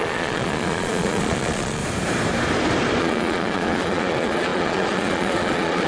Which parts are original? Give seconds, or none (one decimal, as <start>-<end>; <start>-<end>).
1.8-3.0